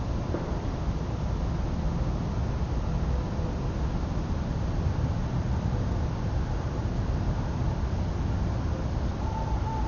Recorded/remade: recorded